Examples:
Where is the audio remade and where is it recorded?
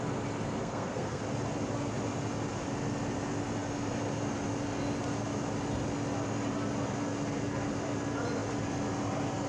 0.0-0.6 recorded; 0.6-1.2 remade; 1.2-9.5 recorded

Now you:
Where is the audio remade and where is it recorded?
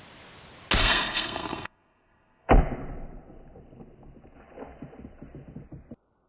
0.0-0.8 recorded; 0.8-2.5 remade; 2.5-6.3 recorded